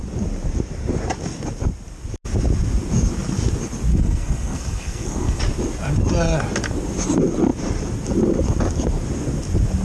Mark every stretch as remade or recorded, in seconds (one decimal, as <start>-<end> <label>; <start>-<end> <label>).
0.0-3.9 recorded; 3.9-5.4 remade; 5.4-9.8 recorded